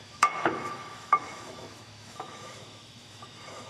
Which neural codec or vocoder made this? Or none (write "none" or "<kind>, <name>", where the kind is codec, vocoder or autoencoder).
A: autoencoder, DAC-VAE